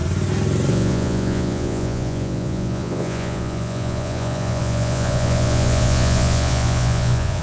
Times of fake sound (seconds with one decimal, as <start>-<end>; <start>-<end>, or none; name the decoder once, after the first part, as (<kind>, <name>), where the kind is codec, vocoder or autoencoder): 0.7-7.4 (vocoder, Vocos)